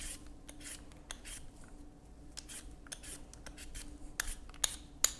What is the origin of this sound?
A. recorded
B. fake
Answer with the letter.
A